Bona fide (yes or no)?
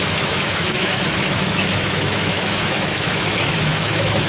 no